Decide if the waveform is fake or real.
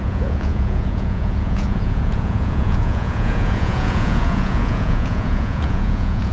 fake